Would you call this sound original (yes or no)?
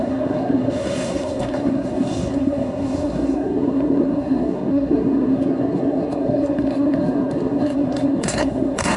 no